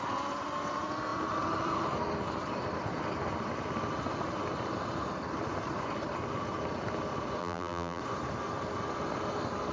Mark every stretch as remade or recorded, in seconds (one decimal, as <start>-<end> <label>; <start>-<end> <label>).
0.0-7.4 recorded; 7.4-8.0 remade; 8.0-9.7 recorded